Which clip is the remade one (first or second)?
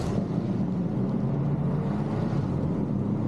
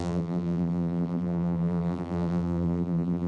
second